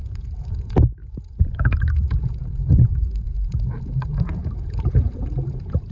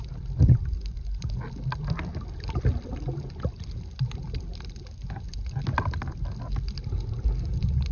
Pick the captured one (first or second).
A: second